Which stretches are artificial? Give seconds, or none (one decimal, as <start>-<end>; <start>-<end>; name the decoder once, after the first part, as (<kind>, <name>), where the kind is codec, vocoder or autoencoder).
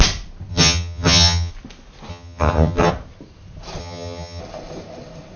0.5-1.5 (vocoder, HiFi-GAN); 2.1-2.9; 3.8-4.4